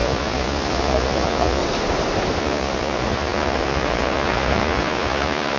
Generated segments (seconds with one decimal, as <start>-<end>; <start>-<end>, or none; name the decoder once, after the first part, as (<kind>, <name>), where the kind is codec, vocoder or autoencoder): 0.0-1.6 (vocoder, Vocos); 2.4-5.6